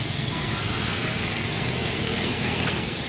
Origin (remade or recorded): remade